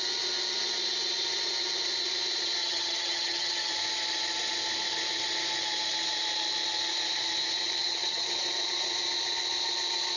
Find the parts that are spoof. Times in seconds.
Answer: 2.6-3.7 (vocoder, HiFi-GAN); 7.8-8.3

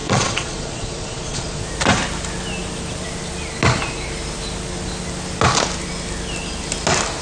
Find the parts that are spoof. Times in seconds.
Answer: 0.0-1.6 (vocoder, Vocos)